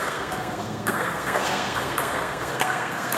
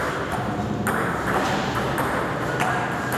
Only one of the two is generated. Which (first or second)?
first